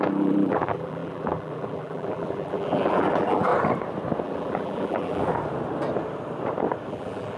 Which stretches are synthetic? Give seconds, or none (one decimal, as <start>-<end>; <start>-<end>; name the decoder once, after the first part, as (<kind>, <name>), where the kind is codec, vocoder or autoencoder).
0.0-3.5 (vocoder, BigVGAN v2); 4.2-5.2; 6.9-7.4